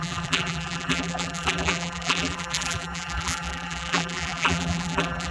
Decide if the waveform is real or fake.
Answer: fake